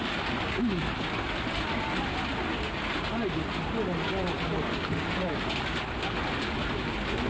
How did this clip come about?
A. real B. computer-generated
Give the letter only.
A